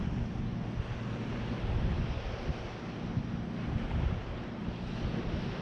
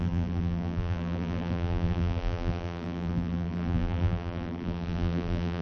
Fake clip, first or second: second